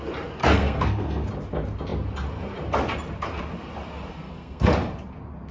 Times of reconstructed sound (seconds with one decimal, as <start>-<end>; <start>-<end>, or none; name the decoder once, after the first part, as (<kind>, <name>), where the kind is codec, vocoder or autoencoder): 0.4-1.3 (codec, SNAC); 4.1-4.7